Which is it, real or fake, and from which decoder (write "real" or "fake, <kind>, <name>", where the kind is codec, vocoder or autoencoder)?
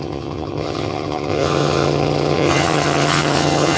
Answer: fake, vocoder, HiFi-GAN